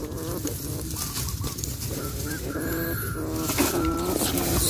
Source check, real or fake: real